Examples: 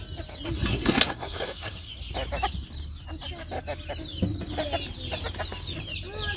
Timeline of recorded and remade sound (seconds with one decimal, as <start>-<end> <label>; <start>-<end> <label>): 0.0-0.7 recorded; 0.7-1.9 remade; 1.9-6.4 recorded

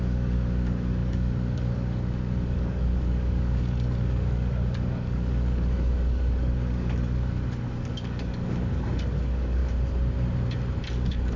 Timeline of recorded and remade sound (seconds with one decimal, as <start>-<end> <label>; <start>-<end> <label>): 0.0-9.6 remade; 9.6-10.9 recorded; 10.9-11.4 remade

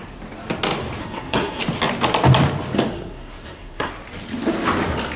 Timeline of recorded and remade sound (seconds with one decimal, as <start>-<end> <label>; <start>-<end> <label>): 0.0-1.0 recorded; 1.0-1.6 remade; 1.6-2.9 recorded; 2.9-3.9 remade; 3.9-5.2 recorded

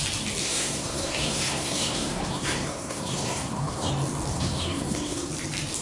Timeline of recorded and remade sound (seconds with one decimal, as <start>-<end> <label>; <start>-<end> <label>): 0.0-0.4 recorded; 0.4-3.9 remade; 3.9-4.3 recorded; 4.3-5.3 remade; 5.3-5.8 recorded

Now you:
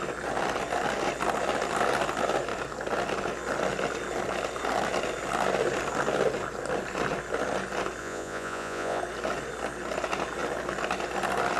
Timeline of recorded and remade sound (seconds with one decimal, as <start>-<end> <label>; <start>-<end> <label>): 0.0-8.0 recorded; 8.0-9.0 remade; 9.0-11.6 recorded